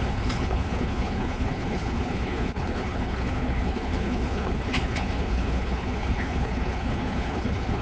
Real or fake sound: fake